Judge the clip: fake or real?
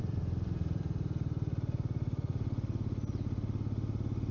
real